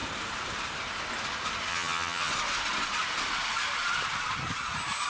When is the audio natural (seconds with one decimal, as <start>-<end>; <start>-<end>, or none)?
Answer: 0.0-1.7; 2.3-5.1

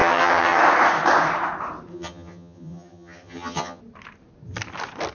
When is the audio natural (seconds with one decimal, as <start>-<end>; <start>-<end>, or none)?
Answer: 0.6-1.9; 3.8-5.1

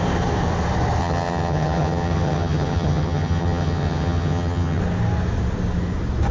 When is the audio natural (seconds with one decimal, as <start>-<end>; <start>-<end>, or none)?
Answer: 0.0-1.0; 4.8-6.3

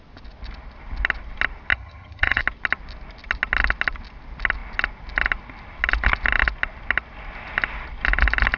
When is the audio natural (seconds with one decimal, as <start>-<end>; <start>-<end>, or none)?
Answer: 0.0-1.7; 2.4-8.6

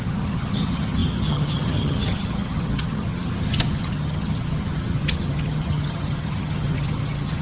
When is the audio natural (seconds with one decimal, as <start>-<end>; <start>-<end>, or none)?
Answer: none

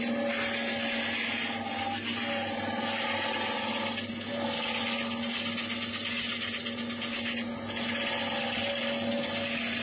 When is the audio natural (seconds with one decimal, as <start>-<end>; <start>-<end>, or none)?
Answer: 0.0-9.8

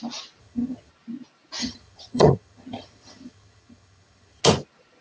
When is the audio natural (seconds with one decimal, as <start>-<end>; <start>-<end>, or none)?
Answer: 0.0-0.4; 0.9-1.6; 4.4-5.0

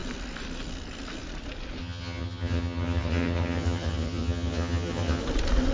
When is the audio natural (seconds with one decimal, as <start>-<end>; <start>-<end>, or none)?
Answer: 0.0-1.8; 5.2-5.7